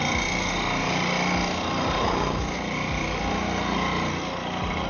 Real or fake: real